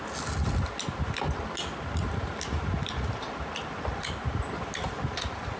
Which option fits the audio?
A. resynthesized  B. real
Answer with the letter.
B